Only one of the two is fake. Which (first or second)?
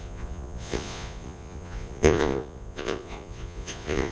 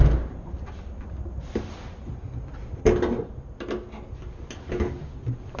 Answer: first